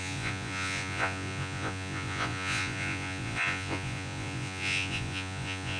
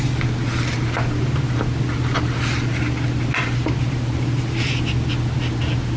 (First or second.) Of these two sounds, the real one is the second